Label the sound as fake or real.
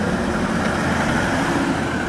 fake